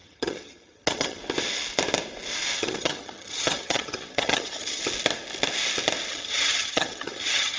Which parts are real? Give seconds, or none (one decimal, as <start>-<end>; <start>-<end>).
1.2-2.6; 4.8-6.1